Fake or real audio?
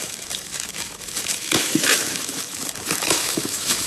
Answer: fake